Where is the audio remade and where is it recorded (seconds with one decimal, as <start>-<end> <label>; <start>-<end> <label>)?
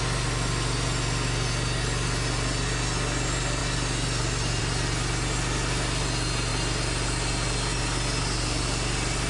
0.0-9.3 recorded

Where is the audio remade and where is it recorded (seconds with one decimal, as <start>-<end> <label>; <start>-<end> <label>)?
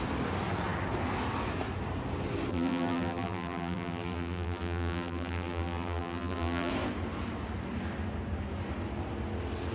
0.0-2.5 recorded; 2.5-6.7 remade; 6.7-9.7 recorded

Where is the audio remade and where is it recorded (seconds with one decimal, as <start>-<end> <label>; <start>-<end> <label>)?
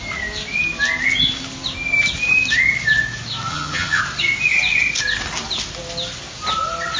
0.0-3.5 recorded; 3.5-4.0 remade; 4.0-7.0 recorded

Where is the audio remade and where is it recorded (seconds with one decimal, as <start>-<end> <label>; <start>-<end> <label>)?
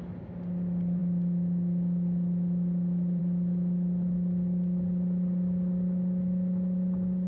0.0-7.3 recorded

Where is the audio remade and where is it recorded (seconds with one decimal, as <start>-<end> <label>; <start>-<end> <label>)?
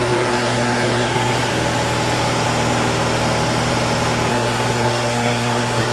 0.0-1.5 remade; 1.5-4.3 recorded; 4.3-5.9 remade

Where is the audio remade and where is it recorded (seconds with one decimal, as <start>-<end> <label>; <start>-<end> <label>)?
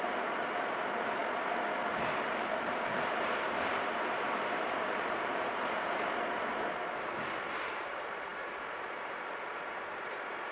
0.0-1.2 remade; 1.2-1.9 recorded; 1.9-10.5 remade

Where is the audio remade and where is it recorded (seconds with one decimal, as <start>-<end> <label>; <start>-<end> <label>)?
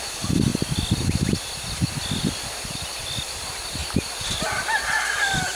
0.0-5.5 recorded